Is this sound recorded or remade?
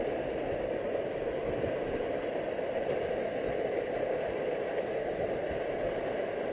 recorded